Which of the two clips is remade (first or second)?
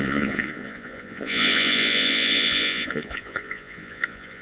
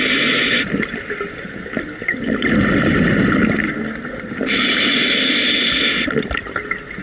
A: first